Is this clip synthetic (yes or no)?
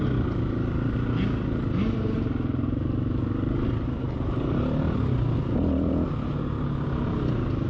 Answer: no